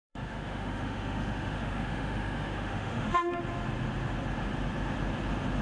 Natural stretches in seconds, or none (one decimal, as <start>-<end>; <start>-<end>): 3.4-5.6